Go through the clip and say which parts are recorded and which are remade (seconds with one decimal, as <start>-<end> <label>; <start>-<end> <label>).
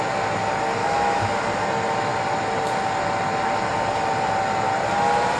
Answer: 0.0-0.8 recorded; 0.8-1.4 remade; 1.4-5.4 recorded